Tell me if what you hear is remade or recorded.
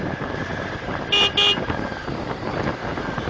recorded